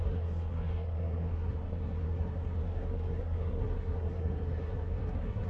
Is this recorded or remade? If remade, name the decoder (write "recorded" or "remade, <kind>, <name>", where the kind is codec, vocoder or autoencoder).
remade, codec, SNAC